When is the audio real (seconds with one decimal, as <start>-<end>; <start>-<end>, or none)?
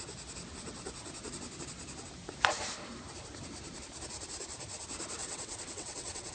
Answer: 0.0-5.2